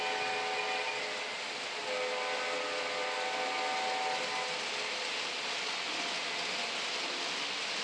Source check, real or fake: real